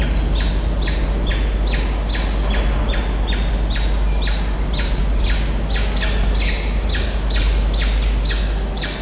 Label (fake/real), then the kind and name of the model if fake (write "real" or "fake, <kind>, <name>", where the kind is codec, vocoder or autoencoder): real